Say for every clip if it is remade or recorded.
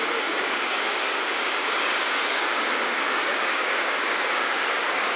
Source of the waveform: remade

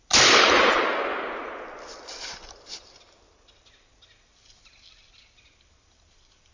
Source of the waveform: recorded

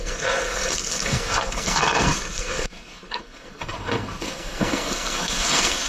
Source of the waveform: remade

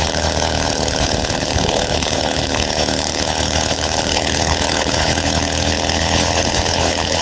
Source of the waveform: remade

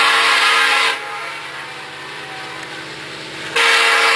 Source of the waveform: recorded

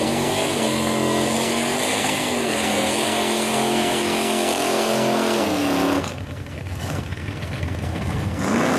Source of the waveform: remade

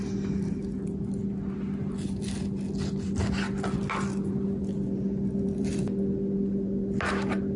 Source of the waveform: recorded